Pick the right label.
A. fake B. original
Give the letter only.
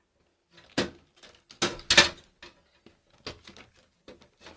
B